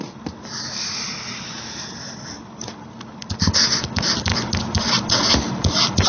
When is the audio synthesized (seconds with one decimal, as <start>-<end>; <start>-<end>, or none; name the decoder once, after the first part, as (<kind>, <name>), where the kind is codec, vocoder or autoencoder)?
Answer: none